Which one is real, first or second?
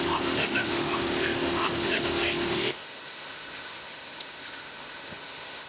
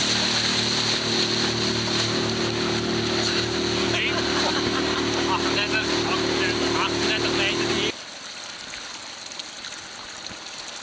second